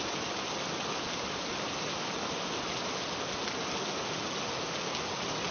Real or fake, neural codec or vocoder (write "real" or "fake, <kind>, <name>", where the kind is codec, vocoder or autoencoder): real